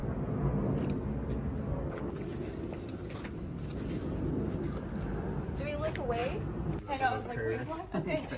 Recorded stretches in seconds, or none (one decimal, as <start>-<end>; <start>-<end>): 0.0-8.4